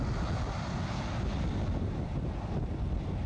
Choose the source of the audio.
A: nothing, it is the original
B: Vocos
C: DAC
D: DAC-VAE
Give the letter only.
A